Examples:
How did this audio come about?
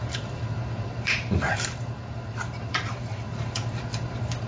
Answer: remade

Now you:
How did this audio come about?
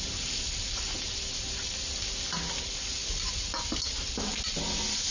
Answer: recorded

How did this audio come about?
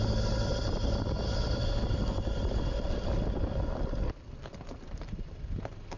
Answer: remade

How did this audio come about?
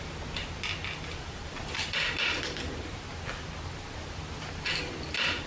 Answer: recorded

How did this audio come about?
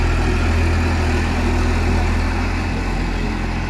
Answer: recorded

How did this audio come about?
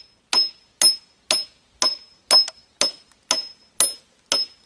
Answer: recorded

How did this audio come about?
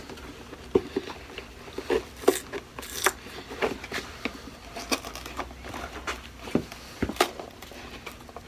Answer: recorded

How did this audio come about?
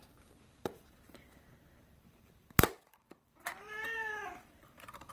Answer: remade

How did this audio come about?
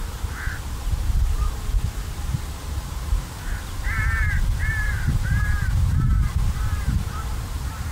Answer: remade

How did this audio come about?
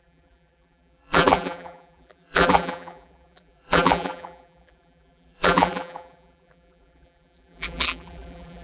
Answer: remade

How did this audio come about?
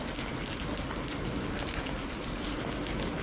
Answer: recorded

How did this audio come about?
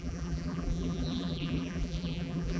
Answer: remade